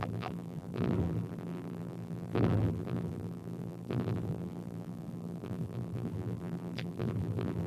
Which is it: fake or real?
fake